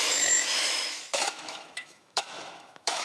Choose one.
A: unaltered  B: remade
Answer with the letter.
B